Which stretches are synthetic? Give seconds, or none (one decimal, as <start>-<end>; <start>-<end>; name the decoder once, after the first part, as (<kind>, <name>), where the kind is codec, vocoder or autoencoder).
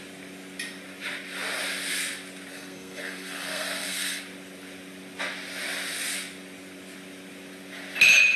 2.5-4.2 (codec, SNAC)